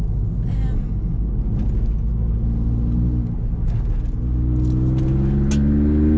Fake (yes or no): no